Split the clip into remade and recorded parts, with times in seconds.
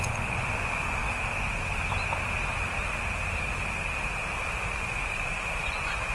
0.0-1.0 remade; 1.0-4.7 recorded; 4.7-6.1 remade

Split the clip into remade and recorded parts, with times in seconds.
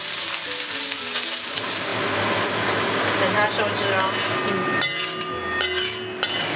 0.0-6.6 recorded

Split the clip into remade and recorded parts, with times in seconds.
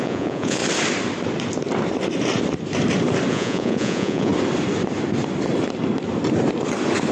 0.0-0.6 remade; 0.6-3.3 recorded; 3.3-4.3 remade; 4.3-7.1 recorded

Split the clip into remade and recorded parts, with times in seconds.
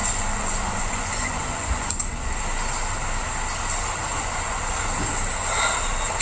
0.0-2.3 remade; 2.3-4.1 recorded; 4.1-4.6 remade; 4.6-6.2 recorded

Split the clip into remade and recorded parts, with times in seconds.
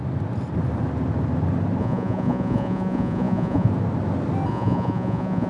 0.0-1.8 recorded; 1.8-3.7 remade; 3.7-4.5 recorded; 4.5-5.5 remade